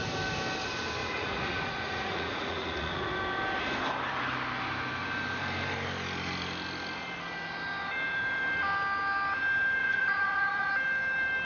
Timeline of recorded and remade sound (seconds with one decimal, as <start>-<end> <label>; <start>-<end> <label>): 0.0-1.0 recorded; 1.0-3.1 remade; 3.1-9.8 recorded; 9.8-10.7 remade; 10.7-11.4 recorded